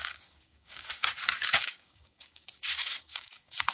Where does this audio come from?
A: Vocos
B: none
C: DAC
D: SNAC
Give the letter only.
C